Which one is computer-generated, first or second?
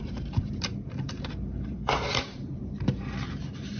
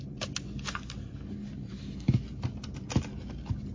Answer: first